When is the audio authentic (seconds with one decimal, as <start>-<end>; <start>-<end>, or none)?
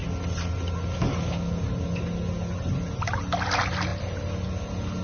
0.0-5.0